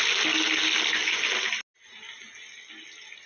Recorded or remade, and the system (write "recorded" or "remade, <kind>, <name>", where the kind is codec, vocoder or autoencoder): recorded